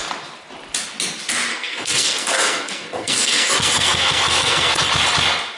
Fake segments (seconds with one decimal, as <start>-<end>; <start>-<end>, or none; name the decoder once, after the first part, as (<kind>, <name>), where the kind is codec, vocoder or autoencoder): 1.5-4.9 (codec, SNAC)